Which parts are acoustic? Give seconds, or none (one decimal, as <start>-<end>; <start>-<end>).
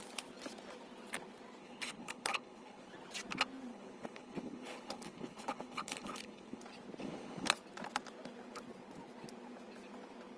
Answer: 0.0-1.6; 2.9-3.7; 6.6-7.0; 7.5-10.4